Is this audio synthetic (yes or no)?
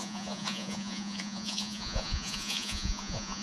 yes